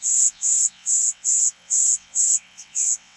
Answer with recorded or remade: remade